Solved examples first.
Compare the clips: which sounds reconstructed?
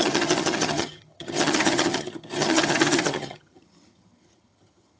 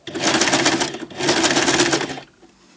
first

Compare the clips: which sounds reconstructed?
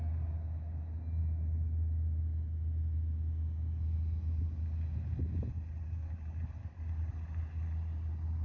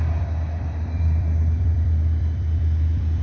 second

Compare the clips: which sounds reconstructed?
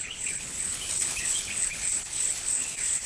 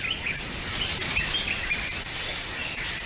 first